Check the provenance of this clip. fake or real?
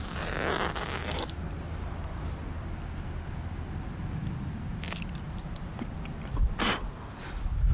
real